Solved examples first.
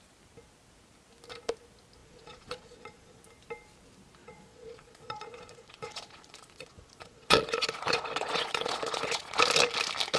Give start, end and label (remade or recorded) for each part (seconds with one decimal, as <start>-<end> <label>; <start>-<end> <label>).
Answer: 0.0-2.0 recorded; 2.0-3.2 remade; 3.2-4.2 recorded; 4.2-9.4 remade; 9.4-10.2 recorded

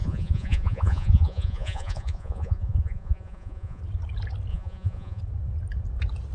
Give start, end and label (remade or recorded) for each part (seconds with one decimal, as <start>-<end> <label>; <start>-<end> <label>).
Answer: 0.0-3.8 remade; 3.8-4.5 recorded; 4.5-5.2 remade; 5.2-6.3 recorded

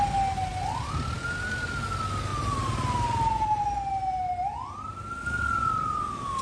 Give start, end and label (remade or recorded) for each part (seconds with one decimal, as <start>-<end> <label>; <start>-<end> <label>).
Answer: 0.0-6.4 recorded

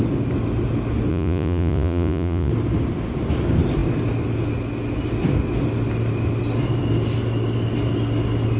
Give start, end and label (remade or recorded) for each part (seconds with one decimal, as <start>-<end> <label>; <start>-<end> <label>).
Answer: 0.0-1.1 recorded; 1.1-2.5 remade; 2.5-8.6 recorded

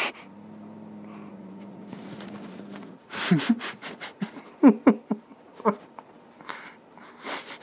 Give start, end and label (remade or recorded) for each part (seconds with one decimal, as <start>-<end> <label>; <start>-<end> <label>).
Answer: 0.0-1.3 recorded; 1.3-4.3 remade; 4.3-5.5 recorded; 5.5-6.1 remade; 6.1-7.6 recorded

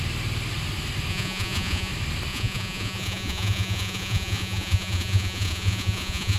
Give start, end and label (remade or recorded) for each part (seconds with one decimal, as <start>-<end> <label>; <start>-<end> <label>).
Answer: 0.0-1.1 recorded; 1.1-1.9 remade; 1.9-2.3 recorded; 2.3-6.4 remade